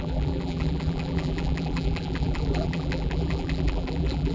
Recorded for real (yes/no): no